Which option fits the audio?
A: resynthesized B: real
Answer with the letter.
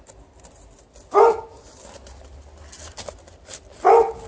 B